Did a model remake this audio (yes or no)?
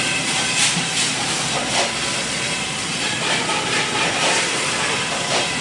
yes